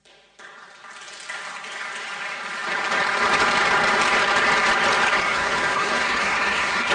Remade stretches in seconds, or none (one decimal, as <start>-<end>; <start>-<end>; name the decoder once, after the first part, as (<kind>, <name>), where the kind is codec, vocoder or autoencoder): 5.2-6.9 (codec, SNAC)